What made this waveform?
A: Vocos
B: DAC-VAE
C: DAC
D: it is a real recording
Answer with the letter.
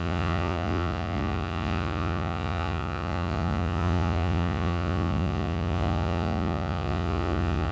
A